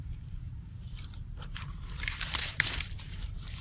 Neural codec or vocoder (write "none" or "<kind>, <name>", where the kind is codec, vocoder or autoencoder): vocoder, BigVGAN v2